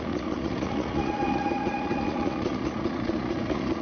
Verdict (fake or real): fake